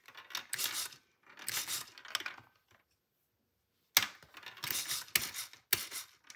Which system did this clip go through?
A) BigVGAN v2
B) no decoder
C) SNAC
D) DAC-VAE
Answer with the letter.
B